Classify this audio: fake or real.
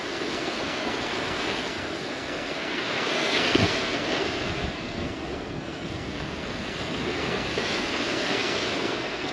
fake